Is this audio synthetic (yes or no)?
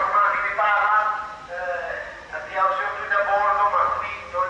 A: no